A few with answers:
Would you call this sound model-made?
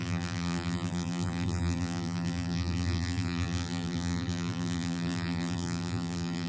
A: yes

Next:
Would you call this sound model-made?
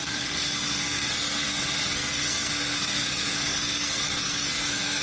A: yes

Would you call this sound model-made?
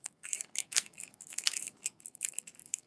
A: yes